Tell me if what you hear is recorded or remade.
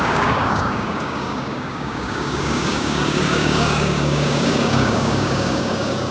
remade